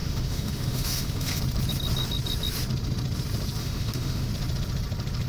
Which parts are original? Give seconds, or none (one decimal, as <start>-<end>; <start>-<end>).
1.4-3.6; 4.3-5.3